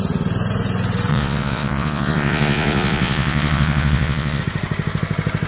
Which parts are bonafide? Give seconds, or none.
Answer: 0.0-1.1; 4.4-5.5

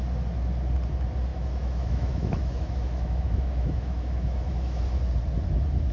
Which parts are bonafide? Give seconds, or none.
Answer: 0.0-1.3; 4.8-5.9

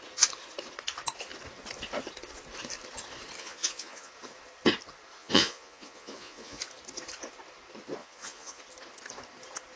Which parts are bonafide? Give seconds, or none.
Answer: 0.0-3.4; 4.1-5.2; 6.6-8.0; 8.6-9.8